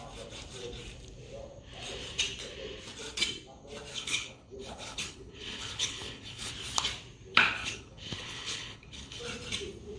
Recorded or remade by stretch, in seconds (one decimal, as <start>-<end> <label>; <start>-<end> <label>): 0.0-3.9 recorded; 3.9-6.5 remade; 6.5-7.6 recorded; 7.6-9.2 remade; 9.2-10.0 recorded